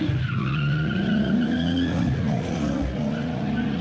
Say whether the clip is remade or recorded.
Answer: remade